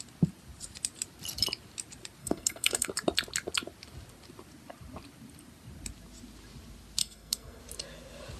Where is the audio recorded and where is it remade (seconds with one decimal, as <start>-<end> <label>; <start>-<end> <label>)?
0.0-2.2 recorded; 2.2-2.9 remade; 2.9-7.0 recorded; 7.0-7.6 remade; 7.6-8.4 recorded